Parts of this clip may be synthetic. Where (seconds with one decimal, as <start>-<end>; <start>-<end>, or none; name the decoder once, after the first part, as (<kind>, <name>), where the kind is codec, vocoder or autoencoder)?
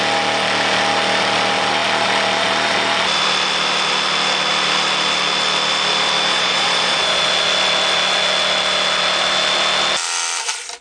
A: 6.3-7.3 (vocoder, Vocos)